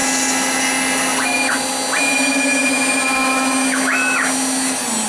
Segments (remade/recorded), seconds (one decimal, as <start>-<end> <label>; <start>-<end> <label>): 0.0-5.1 recorded